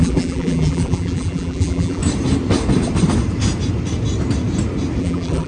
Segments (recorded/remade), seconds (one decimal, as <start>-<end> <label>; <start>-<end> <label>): 0.0-2.0 remade; 2.0-5.0 recorded; 5.0-5.5 remade